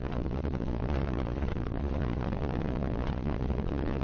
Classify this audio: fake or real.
fake